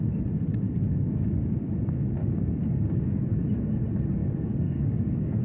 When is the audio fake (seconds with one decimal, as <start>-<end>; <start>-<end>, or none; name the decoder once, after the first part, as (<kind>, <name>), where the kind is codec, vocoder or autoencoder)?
0.5-1.7 (codec, DAC); 2.2-3.3; 4.2-5.4